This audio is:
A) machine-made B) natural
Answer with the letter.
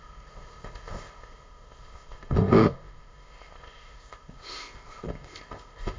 A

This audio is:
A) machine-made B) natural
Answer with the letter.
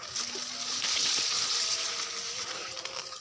B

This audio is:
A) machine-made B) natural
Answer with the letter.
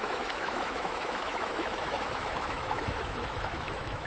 A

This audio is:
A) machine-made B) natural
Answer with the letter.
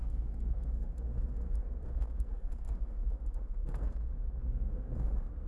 A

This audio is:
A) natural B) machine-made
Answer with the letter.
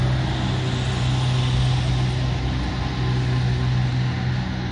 A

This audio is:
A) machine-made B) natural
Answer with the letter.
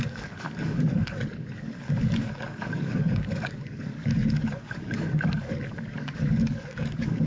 A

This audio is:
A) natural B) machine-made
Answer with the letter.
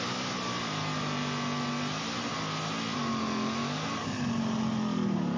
A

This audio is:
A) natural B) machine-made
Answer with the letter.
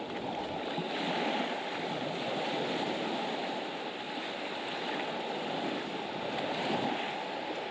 A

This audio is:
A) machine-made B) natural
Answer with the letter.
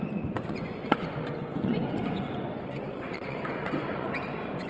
A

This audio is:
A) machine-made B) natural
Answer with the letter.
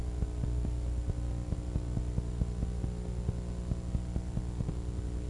B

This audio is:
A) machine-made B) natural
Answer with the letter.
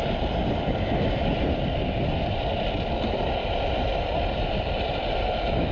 B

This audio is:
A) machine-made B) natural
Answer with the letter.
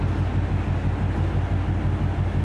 B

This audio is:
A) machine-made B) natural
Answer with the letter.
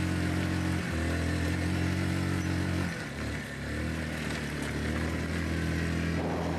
B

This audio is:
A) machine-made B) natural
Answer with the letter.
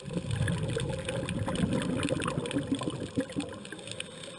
B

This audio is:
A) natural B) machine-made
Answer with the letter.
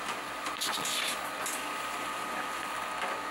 A